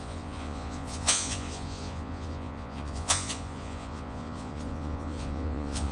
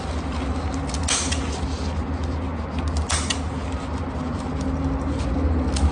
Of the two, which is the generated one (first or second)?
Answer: first